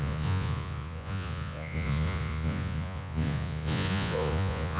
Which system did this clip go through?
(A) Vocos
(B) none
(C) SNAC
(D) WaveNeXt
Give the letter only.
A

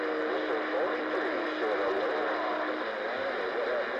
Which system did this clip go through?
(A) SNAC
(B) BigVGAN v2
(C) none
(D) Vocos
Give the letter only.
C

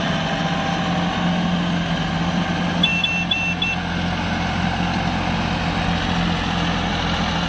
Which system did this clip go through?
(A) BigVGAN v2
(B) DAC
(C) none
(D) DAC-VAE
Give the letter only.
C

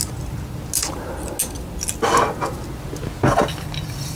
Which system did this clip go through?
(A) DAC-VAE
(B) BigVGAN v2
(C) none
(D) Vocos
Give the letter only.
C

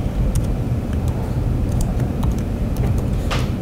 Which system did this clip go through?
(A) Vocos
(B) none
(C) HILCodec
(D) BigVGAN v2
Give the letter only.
B